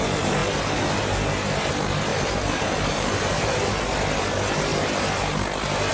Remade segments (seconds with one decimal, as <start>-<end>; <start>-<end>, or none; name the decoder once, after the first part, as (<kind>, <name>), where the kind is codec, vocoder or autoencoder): 2.1-3.7 (vocoder, BigVGAN v2)